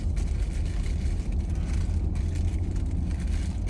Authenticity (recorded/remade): recorded